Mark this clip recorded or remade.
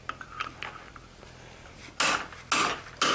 recorded